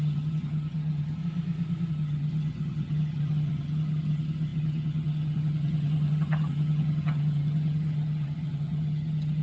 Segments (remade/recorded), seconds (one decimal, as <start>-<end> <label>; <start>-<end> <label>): 0.0-1.2 remade; 1.2-1.9 recorded; 1.9-9.4 remade